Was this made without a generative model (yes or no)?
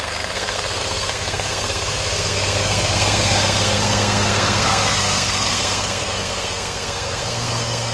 no